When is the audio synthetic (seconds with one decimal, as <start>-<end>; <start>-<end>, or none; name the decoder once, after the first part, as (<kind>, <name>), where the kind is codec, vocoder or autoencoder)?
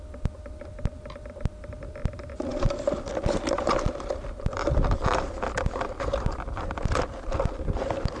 none